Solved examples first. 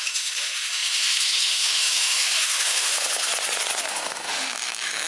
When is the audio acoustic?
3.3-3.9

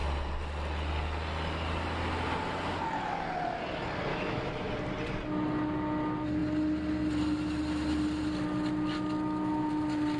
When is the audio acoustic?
0.0-4.1; 4.7-10.2

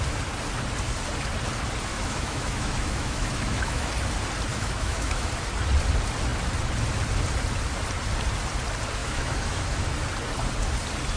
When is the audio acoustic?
0.0-1.9; 3.9-4.5; 5.3-9.0; 9.9-11.2

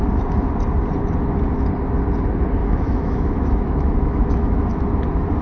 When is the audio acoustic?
0.0-2.6; 4.7-5.4

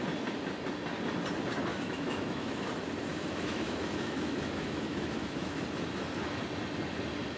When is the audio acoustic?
0.0-1.7; 2.7-3.1; 5.6-7.4

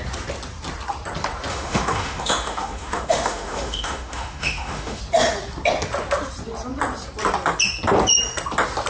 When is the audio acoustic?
0.0-1.5; 5.0-8.9

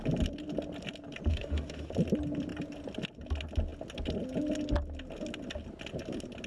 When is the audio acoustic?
0.0-1.3; 1.9-6.5

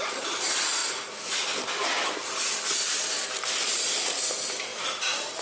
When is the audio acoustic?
0.0-5.4